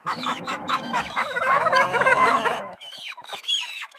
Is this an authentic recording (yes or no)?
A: no